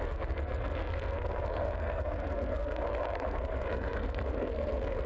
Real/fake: fake